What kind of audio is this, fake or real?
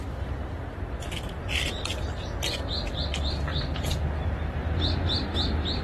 real